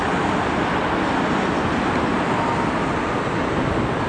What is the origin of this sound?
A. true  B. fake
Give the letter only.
A